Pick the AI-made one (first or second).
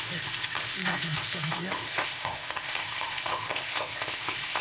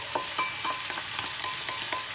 first